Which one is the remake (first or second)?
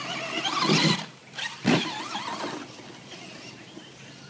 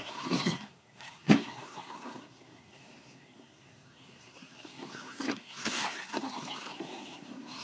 second